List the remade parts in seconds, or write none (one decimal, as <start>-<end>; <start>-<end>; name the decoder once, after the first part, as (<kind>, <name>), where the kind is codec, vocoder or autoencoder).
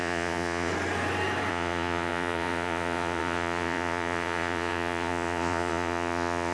0.0-0.7 (vocoder, Vocos); 1.5-6.5